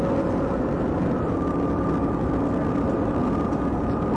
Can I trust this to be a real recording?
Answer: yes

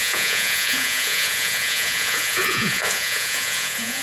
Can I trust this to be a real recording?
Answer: no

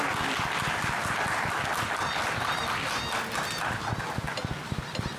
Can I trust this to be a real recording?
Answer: yes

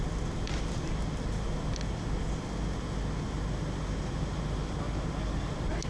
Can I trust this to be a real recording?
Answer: yes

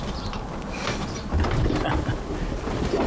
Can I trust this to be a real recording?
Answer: yes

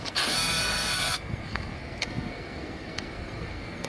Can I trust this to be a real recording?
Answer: no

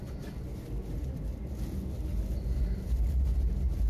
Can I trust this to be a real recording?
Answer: yes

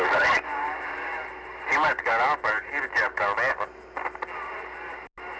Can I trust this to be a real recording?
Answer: yes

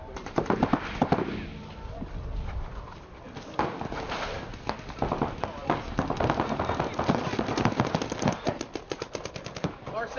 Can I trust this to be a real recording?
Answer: yes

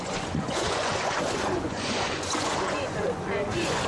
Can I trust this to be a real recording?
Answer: no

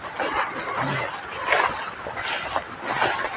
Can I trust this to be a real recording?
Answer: yes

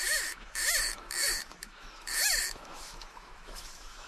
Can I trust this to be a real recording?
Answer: no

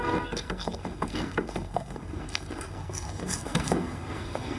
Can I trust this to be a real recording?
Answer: no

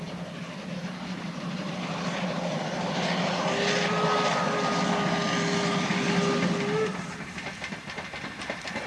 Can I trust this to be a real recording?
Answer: yes